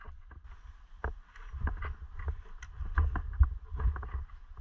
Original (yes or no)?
yes